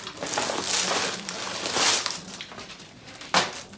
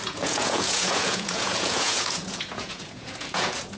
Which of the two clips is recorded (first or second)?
first